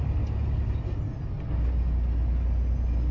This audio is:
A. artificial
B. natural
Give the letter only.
B